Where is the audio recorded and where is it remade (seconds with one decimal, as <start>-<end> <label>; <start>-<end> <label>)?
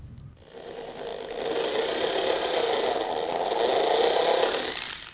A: 0.0-5.1 recorded